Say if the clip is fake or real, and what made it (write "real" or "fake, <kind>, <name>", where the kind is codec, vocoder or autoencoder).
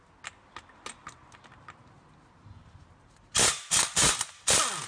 real